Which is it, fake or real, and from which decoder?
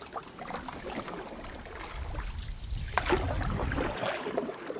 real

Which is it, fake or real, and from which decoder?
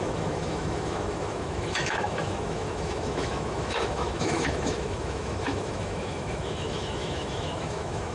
fake, autoencoder, DAC-VAE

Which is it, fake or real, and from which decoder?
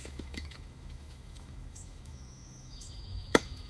fake, autoencoder, DAC-VAE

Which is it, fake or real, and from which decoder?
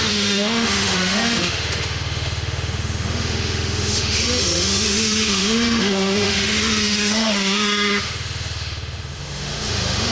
fake, autoencoder, DAC-VAE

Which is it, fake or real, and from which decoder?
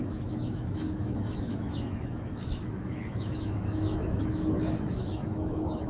fake, autoencoder, DAC-VAE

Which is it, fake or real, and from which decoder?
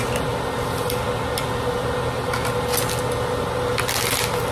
real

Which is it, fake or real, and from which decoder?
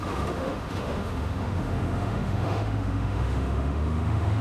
fake, autoencoder, DAC-VAE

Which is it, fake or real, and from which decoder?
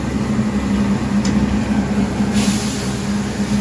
real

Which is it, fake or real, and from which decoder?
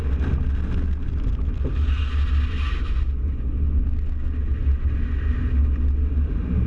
real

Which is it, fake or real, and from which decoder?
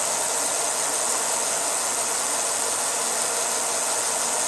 real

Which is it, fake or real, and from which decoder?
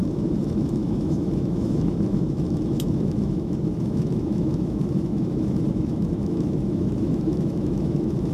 fake, autoencoder, DAC-VAE